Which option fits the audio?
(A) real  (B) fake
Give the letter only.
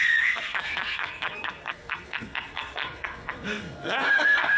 B